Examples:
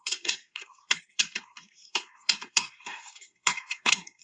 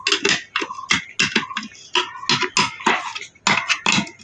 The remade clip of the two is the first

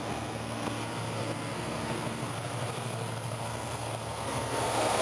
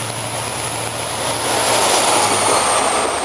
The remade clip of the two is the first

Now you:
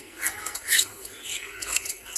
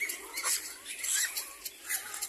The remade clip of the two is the first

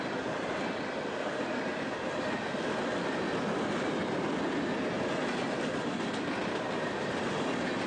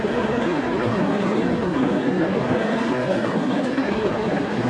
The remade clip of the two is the second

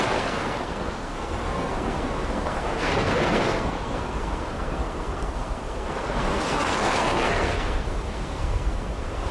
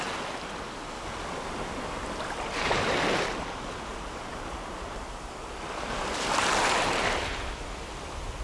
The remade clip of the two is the first